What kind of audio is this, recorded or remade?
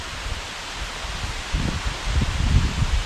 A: recorded